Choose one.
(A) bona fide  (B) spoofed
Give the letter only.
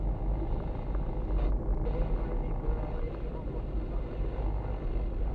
A